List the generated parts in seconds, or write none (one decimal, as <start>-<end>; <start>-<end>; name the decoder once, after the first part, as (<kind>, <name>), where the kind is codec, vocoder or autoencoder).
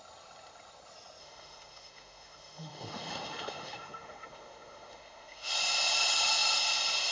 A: 1.2-5.5 (autoencoder, DAC-VAE)